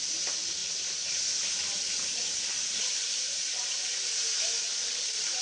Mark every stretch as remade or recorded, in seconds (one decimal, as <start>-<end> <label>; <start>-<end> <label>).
0.0-4.3 remade; 4.3-4.9 recorded; 4.9-5.4 remade